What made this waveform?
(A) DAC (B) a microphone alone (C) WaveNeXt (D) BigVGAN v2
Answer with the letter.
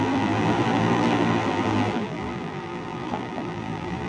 D